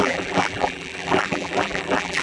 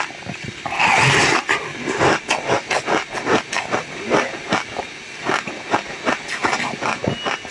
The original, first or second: second